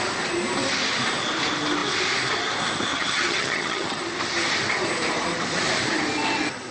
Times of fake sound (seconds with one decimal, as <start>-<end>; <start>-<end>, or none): 2.9-4.0